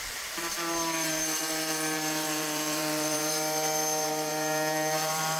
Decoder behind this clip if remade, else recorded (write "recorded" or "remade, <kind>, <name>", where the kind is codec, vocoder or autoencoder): remade, vocoder, BigVGAN v2